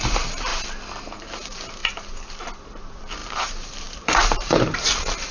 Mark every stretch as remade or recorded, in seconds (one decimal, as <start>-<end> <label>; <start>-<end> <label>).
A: 0.0-0.5 remade; 0.5-1.2 recorded; 1.2-1.8 remade; 1.8-2.7 recorded; 2.7-5.3 remade